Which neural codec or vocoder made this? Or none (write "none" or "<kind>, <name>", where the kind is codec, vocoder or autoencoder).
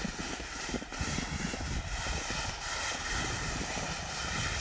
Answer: none